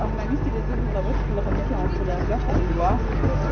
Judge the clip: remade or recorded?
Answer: recorded